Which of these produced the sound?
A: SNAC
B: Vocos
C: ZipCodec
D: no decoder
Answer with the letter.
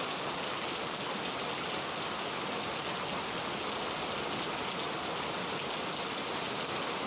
D